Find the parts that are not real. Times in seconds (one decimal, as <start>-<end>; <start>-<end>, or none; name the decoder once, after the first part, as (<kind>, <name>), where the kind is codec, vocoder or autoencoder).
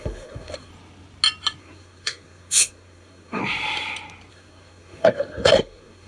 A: 0.0-0.7 (codec, SNAC); 1.6-3.4; 4.3-6.1